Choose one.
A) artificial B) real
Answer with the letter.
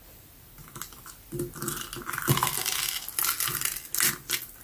B